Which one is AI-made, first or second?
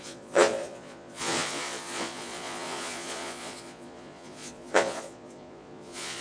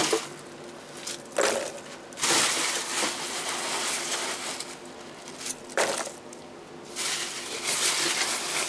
first